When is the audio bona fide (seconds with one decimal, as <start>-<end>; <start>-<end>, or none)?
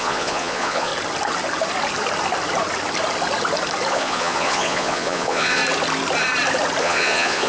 0.9-3.9; 5.6-6.8